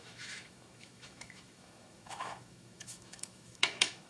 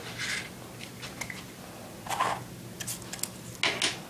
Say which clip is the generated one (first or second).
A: first